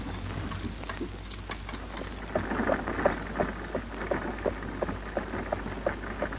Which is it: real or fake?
real